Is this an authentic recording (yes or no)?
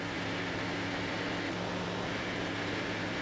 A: yes